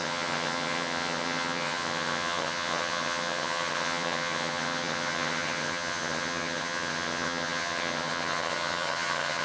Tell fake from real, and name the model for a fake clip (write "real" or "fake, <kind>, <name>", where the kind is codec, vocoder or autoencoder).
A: fake, vocoder, HiFi-GAN